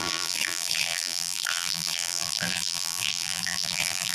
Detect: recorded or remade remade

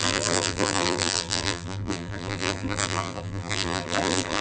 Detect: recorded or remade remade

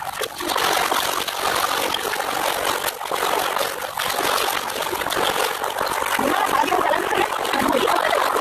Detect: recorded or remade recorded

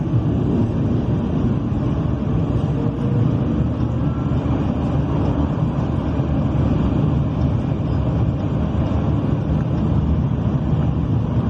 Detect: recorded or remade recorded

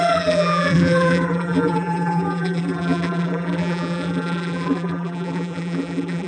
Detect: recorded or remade remade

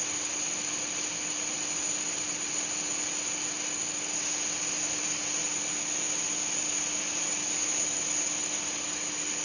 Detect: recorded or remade recorded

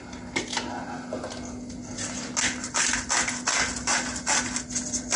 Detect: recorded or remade recorded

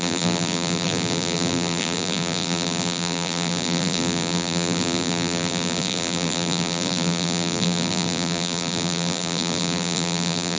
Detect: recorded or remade remade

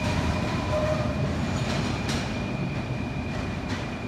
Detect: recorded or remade remade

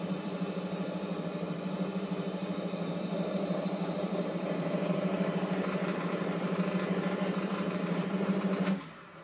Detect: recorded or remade remade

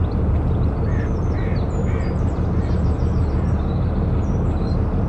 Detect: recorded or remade remade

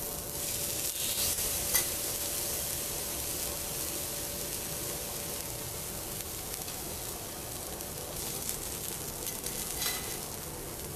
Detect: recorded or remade recorded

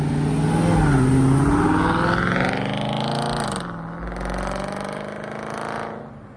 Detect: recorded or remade recorded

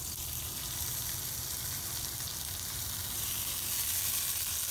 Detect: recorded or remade recorded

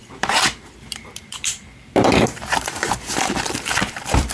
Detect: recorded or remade remade